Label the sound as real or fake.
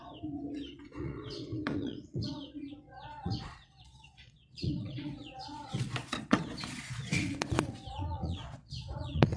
fake